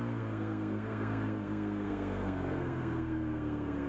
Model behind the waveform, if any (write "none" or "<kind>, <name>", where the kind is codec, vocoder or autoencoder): codec, SNAC